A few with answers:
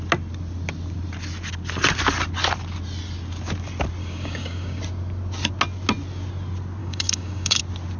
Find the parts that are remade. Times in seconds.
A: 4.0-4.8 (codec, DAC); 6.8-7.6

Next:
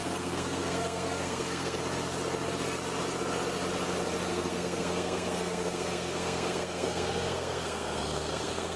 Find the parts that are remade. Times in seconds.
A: 0.0-1.8 (codec, SNAC); 4.3-8.8

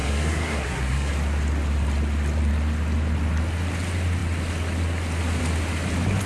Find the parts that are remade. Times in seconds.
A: 0.0-1.1 (codec, SNAC)

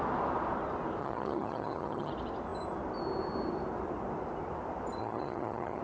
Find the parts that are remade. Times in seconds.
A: 1.0-2.1 (vocoder, HiFi-GAN); 5.0-5.8

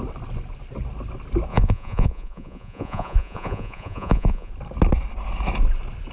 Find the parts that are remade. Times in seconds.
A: 1.5-4.5 (vocoder, Vocos)